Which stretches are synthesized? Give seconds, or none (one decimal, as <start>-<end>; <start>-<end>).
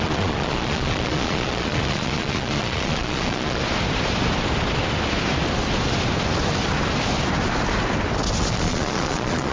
0.0-3.6; 8.5-9.5